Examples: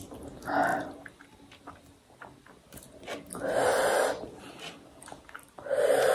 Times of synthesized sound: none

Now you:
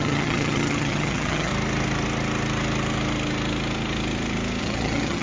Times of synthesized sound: 0.0-1.5 (vocoder, HiFi-GAN); 4.6-5.2

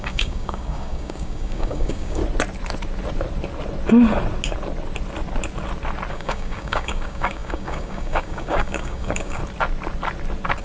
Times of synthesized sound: 0.0-2.2 (codec, DAC); 6.1-9.4

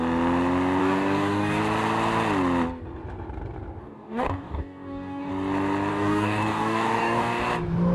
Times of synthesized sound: 0.8-1.6 (codec, DAC); 3.8-5.3; 5.9-7.4

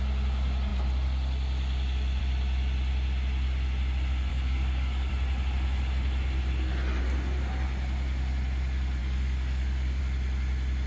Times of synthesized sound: 4.3-5.1 (codec, DAC); 9.0-10.0

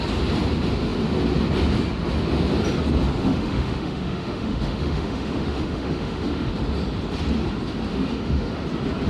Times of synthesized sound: 3.2-6.5 (autoencoder, DAC-VAE); 7.9-8.6

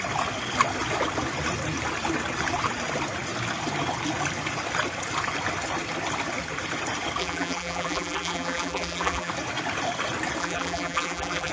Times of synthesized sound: 7.2-9.3 (vocoder, BigVGAN v2); 10.4-11.5